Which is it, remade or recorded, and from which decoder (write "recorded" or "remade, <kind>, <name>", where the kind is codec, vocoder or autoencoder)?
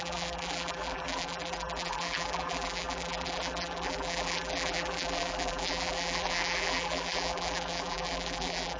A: remade, vocoder, BigVGAN v2